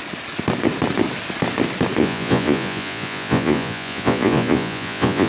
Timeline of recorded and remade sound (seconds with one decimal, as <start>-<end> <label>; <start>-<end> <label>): 0.0-2.0 recorded; 2.0-5.3 remade